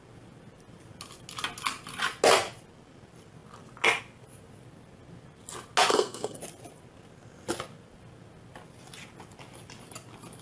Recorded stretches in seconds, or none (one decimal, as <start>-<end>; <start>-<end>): 0.0-5.9; 6.4-10.4